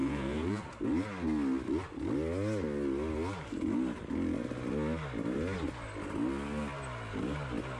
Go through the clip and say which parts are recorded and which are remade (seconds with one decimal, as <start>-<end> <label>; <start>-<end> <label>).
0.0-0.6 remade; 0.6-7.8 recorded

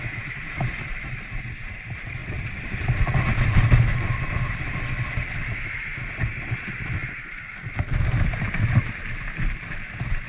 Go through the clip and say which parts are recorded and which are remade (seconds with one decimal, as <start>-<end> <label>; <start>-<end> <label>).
0.0-2.2 recorded; 2.2-3.8 remade; 3.8-10.3 recorded

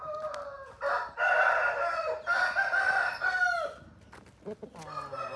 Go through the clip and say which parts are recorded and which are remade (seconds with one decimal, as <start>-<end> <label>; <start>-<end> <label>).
0.0-5.4 recorded

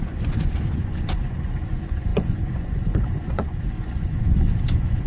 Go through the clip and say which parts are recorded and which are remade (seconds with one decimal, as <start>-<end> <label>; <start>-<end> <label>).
0.0-5.1 remade

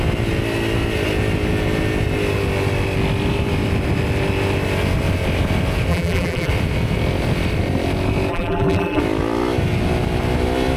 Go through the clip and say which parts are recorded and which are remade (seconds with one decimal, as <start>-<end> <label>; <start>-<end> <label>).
0.0-5.9 recorded; 5.9-6.5 remade; 6.5-8.3 recorded; 8.3-9.0 remade; 9.0-10.8 recorded

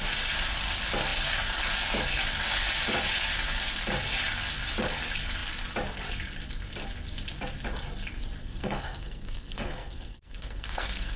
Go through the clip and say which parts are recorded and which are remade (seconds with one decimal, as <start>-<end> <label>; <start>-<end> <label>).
0.0-8.4 recorded; 8.4-11.2 remade

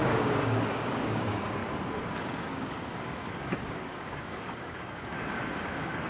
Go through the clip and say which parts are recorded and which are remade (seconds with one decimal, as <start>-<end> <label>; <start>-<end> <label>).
0.0-1.6 remade; 1.6-2.1 recorded; 2.1-6.1 remade